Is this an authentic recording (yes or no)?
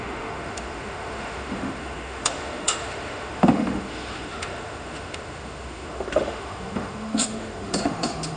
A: no